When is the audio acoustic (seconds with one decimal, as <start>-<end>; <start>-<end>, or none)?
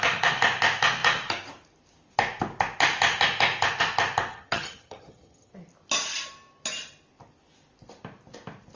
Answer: 0.0-4.3; 5.5-8.8